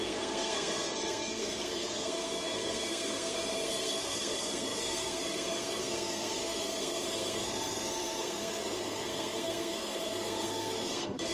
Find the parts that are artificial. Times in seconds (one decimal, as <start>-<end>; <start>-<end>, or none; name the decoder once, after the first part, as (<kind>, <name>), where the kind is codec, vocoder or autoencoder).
0.0-11.3 (codec, SNAC)